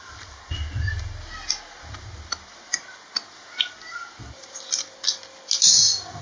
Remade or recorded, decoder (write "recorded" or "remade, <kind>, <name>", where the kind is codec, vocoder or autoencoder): recorded